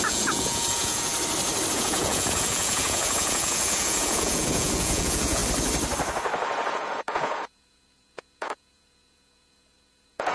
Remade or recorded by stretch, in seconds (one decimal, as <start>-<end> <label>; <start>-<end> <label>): 0.0-1.1 remade; 1.1-1.7 recorded; 1.7-5.4 remade; 5.4-6.7 recorded; 6.7-10.3 remade